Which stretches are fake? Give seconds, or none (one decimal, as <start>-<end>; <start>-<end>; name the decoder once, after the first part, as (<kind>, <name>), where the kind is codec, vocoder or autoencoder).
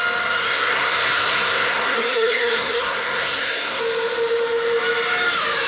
0.4-3.8 (codec, SNAC)